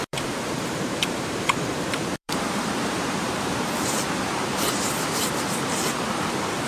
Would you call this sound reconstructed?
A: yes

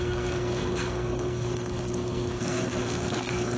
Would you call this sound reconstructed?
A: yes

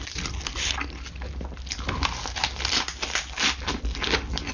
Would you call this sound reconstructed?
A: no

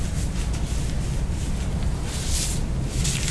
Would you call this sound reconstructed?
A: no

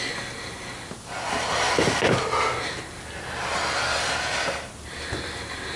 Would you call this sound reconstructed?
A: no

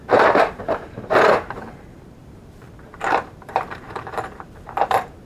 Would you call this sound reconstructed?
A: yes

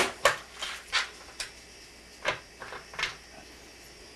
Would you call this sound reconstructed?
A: no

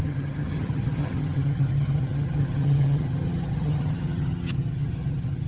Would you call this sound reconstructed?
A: yes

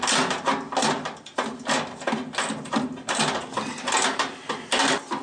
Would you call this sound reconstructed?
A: no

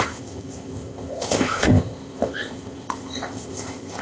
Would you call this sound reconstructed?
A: yes